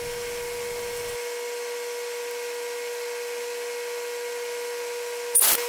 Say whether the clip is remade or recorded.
recorded